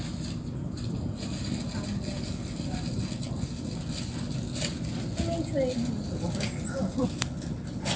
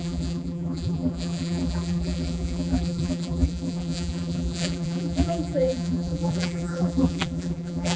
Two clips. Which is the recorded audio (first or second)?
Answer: first